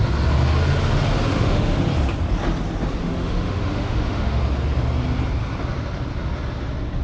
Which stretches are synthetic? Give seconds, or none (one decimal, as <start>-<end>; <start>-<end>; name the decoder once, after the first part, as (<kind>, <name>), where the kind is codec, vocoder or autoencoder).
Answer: 1.3-1.8 (autoencoder, DAC-VAE); 3.0-4.4